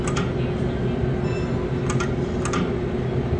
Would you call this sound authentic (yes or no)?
yes